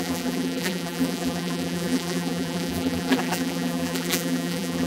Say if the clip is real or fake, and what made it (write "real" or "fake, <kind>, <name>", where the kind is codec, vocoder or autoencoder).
fake, vocoder, BigVGAN v2